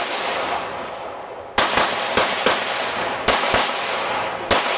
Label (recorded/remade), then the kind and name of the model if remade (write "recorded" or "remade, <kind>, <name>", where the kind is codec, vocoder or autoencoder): recorded